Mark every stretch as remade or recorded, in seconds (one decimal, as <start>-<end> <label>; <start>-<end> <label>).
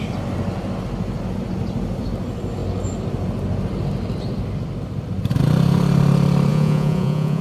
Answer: 0.0-6.5 recorded; 6.5-7.4 remade